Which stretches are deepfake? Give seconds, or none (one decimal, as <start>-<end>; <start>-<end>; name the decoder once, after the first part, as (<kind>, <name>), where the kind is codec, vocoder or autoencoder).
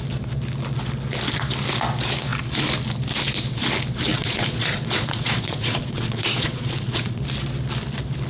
4.1-7.2 (vocoder, Vocos)